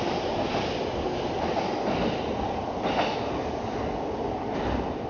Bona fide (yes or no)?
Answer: yes